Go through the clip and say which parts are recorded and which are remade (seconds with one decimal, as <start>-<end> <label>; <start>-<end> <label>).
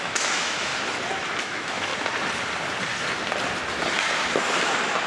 0.0-0.7 remade; 0.7-1.4 recorded; 1.4-1.9 remade; 1.9-5.1 recorded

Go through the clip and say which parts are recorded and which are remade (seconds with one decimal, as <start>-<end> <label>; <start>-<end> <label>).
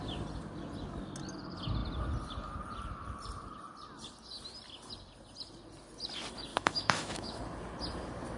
0.0-6.5 recorded; 6.5-7.4 remade; 7.4-8.4 recorded